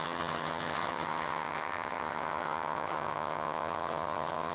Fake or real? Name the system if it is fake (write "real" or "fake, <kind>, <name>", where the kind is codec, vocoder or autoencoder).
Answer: fake, vocoder, HiFi-GAN